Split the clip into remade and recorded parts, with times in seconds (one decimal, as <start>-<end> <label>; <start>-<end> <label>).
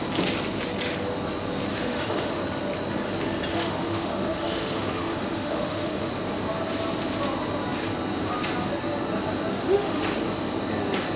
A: 0.0-1.7 recorded; 1.7-2.4 remade; 2.4-3.5 recorded; 3.5-6.1 remade; 6.1-9.5 recorded; 9.5-10.0 remade; 10.0-11.2 recorded